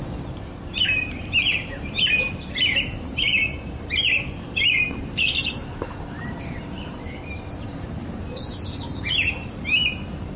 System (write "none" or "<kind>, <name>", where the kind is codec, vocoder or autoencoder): vocoder, BigVGAN v2